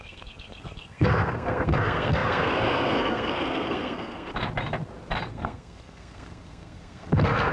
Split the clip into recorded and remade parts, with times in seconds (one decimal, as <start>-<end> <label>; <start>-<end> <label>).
0.0-4.3 remade; 4.3-5.3 recorded; 5.3-7.5 remade